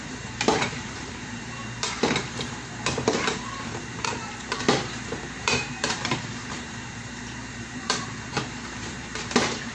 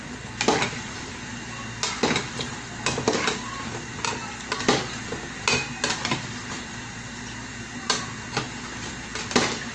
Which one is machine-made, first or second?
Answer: first